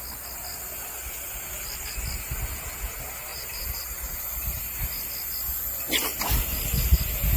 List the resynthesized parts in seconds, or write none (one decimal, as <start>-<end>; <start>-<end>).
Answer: 3.3-4.6